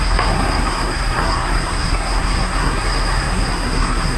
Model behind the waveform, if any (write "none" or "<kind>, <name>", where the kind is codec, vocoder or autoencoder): codec, SNAC